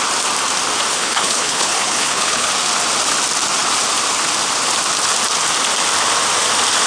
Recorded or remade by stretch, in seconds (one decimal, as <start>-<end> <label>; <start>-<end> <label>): 0.0-0.9 recorded; 0.9-2.5 remade; 2.5-6.9 recorded